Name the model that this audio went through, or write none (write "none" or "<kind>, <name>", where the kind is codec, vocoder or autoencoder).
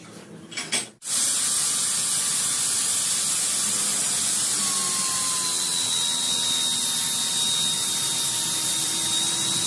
none